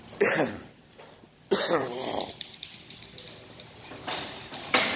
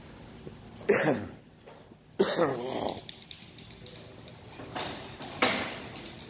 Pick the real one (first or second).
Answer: second